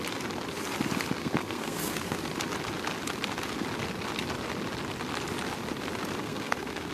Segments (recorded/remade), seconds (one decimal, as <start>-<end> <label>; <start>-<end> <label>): 0.0-1.2 recorded; 1.2-2.2 remade; 2.2-6.2 recorded; 6.2-6.9 remade